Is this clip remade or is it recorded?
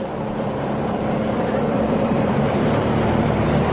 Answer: remade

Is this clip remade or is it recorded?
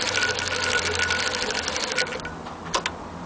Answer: recorded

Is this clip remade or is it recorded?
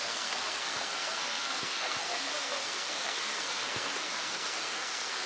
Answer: remade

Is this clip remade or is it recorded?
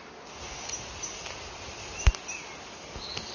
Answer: recorded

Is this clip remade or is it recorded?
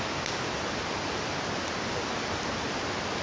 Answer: recorded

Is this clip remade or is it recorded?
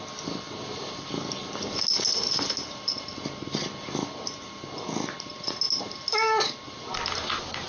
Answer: recorded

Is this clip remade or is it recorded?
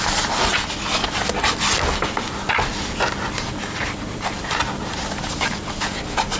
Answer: recorded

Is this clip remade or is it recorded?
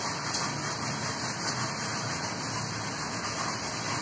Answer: recorded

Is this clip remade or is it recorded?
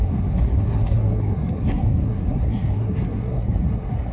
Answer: remade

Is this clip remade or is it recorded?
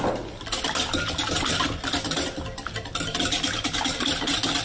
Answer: recorded